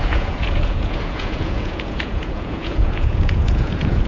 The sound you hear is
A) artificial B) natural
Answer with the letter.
A